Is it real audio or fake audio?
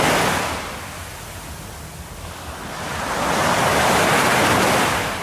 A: real